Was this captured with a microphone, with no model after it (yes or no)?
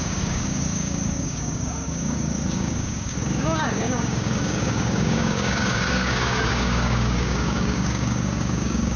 no